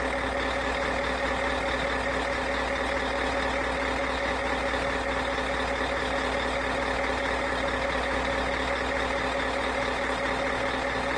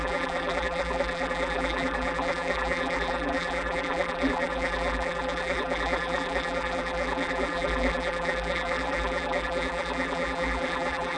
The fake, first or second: second